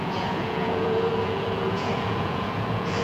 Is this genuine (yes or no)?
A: no